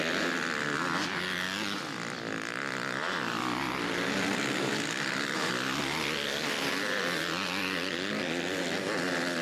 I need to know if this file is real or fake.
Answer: real